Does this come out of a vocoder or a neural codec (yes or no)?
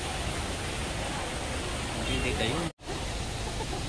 no